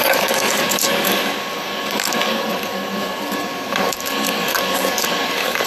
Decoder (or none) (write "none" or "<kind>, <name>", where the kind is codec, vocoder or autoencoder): codec, DAC